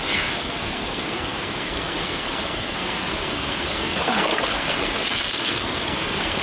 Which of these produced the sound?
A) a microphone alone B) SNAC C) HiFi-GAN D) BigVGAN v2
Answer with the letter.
B